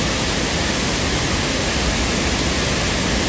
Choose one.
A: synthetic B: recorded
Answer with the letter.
B